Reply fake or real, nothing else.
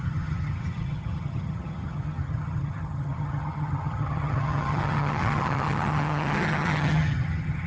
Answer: fake